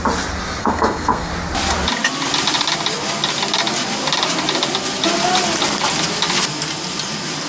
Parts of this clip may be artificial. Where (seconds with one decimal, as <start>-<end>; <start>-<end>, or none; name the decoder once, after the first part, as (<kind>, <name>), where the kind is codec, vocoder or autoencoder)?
0.6-1.3 (codec, SNAC)